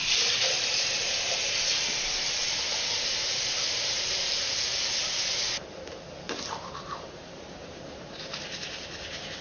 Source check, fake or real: fake